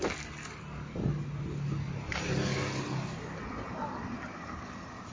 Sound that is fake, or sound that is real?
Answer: real